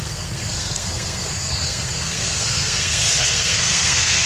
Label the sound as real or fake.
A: fake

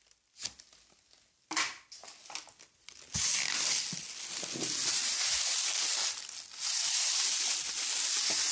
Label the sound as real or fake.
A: real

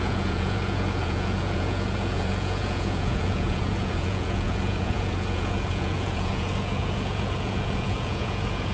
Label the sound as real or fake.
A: fake